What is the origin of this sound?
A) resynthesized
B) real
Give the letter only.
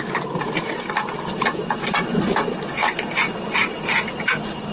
B